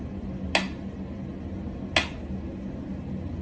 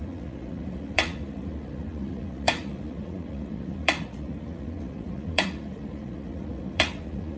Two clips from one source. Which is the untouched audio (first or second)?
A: first